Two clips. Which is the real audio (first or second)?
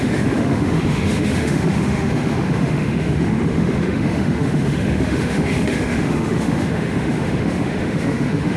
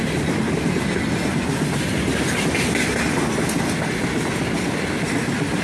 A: second